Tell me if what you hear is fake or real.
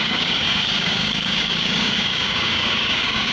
fake